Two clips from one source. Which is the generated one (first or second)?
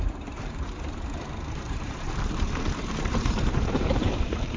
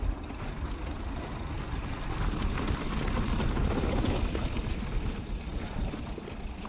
first